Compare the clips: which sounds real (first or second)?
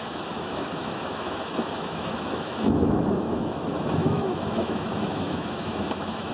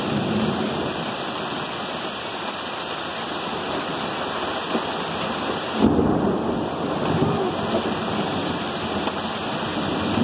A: second